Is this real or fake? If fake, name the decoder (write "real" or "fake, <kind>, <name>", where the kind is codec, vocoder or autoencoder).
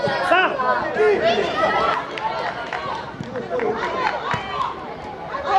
real